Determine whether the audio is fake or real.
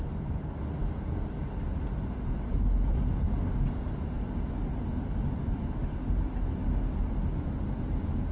real